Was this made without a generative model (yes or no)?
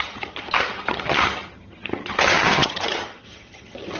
no